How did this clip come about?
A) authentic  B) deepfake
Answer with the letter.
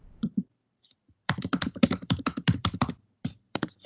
B